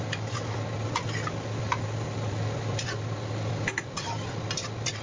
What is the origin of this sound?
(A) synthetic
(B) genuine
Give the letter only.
B